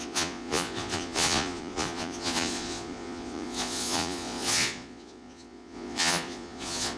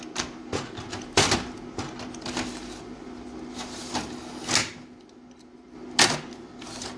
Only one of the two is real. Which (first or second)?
second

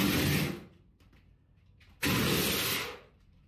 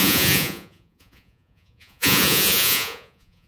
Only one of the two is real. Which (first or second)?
first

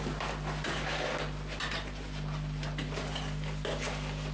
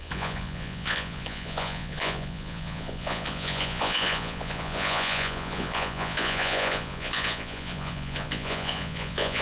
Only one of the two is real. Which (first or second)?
first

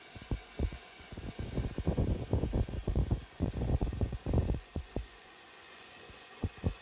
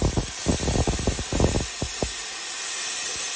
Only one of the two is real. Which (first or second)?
second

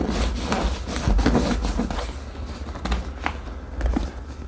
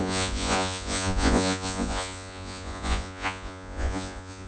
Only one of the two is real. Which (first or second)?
first